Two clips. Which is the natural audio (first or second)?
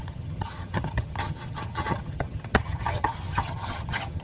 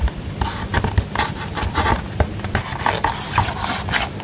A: second